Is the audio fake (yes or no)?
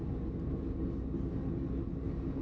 no